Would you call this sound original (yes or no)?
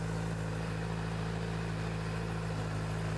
yes